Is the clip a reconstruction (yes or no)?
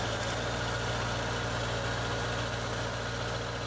no